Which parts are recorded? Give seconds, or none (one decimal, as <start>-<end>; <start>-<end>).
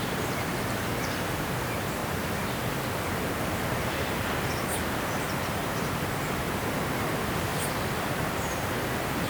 2.0-3.3; 5.6-6.6